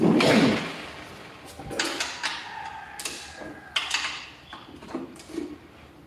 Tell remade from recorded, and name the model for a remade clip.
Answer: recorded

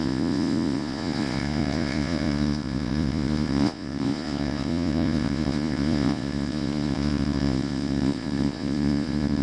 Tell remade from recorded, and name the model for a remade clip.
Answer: remade, vocoder, Vocos